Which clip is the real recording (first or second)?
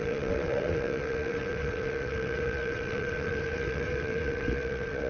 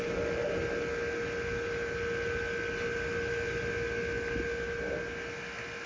second